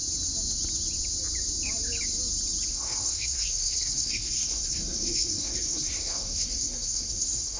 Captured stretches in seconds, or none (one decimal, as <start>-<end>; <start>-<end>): 0.0-2.7